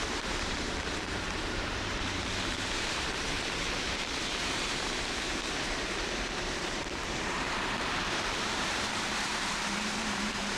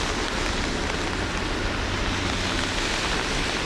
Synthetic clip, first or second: first